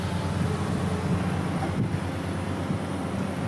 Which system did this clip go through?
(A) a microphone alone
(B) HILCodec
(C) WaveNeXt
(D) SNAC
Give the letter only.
A